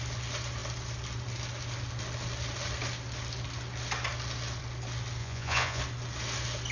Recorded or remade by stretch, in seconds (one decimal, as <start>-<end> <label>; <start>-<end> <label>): 0.0-5.2 recorded; 5.2-5.8 remade; 5.8-6.7 recorded